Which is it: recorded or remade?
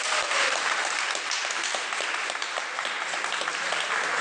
remade